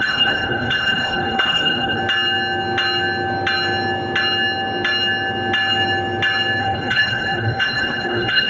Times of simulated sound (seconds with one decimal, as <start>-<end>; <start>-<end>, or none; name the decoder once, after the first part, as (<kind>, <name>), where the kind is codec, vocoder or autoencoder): 0.0-2.0 (codec, HILCodec); 6.6-8.5